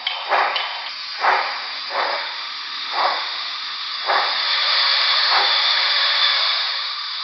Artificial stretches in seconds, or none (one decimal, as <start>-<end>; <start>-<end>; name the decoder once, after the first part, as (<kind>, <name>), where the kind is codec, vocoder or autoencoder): 2.1-3.9 (autoencoder, DAC-VAE); 4.4-7.2

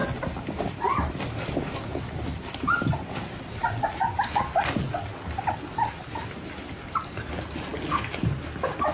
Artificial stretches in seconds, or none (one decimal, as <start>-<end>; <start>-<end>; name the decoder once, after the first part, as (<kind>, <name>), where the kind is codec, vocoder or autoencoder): 0.0-1.1 (vocoder, BigVGAN v2)

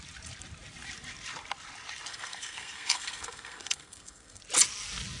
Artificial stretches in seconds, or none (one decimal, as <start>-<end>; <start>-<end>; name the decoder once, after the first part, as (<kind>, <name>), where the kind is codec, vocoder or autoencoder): 2.1-4.4 (codec, SNAC)

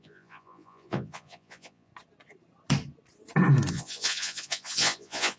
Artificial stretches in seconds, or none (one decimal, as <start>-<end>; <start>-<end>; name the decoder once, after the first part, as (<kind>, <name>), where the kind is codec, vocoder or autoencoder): 0.0-1.9 (vocoder, Vocos); 3.7-5.4